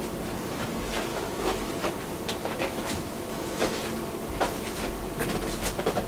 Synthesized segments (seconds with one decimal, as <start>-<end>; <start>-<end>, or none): 1.1-1.7; 2.4-3.8